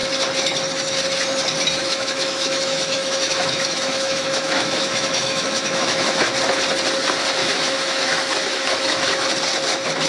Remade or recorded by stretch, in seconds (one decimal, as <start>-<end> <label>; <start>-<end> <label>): 0.0-1.8 recorded; 1.8-6.3 remade; 6.3-7.4 recorded; 7.4-9.3 remade; 9.3-10.1 recorded